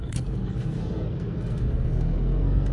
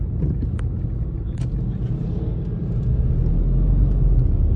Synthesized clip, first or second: first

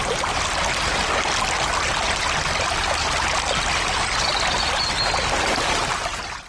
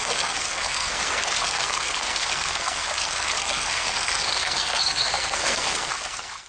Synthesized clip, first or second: second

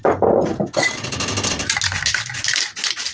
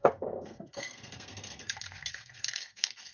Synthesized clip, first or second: second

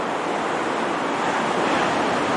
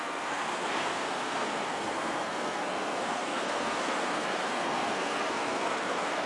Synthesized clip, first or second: second